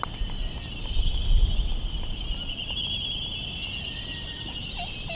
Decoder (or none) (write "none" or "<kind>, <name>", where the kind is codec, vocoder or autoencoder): none